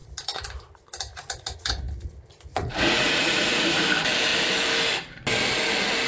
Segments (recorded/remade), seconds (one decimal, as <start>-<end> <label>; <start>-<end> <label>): 0.0-1.1 recorded; 1.1-1.7 remade; 1.7-2.5 recorded; 2.5-3.8 remade; 3.8-6.1 recorded